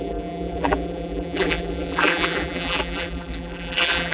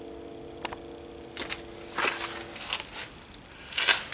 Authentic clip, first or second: second